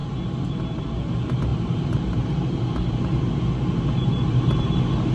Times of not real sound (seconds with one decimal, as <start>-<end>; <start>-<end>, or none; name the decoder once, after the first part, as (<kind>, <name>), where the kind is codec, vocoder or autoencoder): none